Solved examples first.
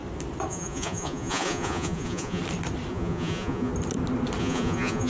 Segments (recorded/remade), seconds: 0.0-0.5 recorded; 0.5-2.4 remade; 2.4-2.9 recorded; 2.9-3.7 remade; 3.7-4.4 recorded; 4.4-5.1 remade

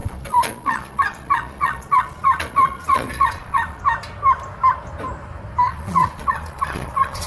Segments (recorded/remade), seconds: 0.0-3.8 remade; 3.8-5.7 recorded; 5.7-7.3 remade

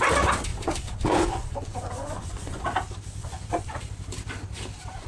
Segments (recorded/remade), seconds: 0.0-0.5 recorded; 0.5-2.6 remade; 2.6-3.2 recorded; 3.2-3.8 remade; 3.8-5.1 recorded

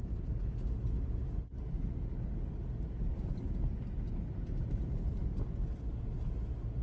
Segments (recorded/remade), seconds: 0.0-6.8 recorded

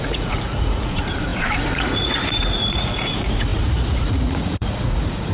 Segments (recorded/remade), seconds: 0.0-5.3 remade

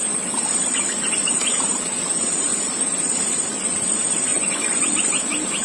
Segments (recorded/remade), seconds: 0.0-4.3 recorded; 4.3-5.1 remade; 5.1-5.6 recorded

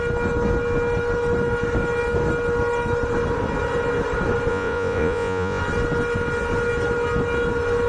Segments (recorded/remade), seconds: 0.0-4.5 recorded; 4.5-5.6 remade; 5.6-7.9 recorded

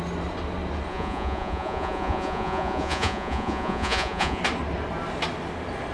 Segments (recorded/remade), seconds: 0.0-0.9 recorded; 0.9-4.4 remade; 4.4-5.9 recorded